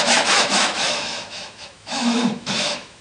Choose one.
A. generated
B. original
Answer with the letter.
A